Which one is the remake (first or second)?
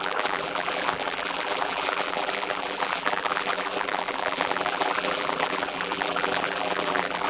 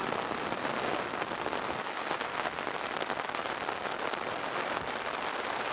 first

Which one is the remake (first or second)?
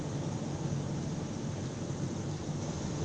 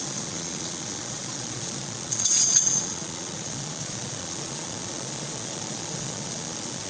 second